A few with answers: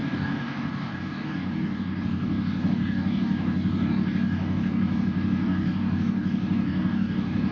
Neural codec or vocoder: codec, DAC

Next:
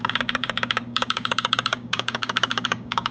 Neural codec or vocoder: codec, DAC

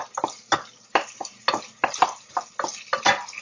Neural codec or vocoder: none